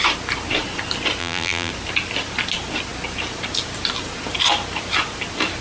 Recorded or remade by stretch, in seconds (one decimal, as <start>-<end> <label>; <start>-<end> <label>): 0.0-1.2 recorded; 1.2-1.7 remade; 1.7-5.6 recorded